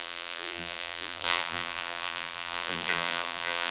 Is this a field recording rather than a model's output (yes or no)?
no